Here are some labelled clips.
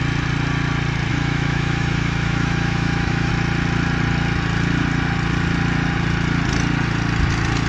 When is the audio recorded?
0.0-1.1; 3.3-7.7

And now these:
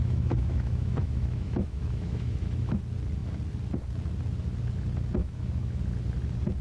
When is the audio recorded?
2.8-5.2; 5.8-6.6

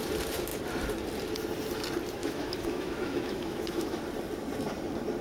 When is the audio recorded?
0.0-2.2; 4.0-5.2

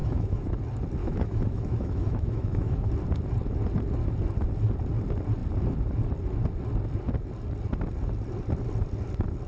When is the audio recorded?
0.6-1.0; 2.9-9.5

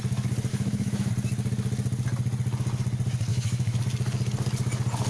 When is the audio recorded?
0.0-0.5; 1.1-3.3; 3.8-5.1

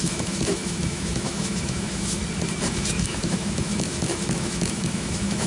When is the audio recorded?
2.2-2.7